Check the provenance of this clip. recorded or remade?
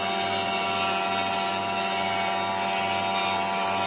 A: recorded